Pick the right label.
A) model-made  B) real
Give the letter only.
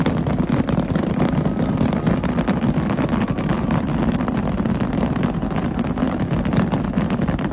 B